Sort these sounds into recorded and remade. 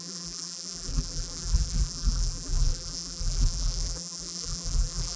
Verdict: remade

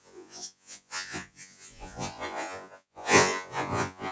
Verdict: remade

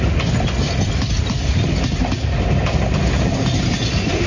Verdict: recorded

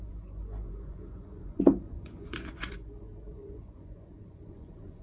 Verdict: remade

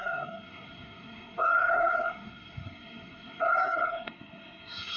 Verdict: remade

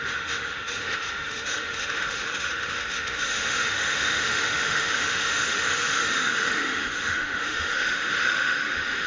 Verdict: remade